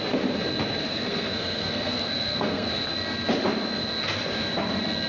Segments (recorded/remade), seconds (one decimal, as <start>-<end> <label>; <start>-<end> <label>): 0.0-0.8 recorded; 0.8-2.7 remade; 2.7-5.1 recorded